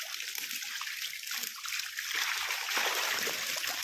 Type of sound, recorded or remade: recorded